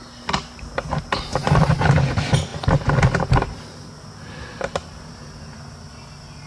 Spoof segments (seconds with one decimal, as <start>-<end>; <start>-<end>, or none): none

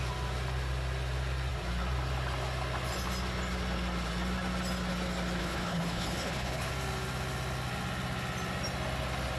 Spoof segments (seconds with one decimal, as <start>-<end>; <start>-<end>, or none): 5.4-6.7

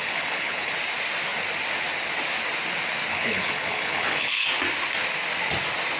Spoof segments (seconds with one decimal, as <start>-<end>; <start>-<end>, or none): 0.0-0.7; 3.1-4.4

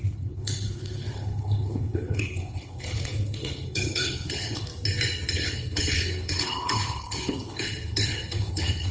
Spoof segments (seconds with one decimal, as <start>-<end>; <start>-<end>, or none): 0.0-4.7; 5.3-8.9